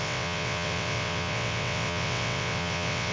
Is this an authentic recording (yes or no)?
no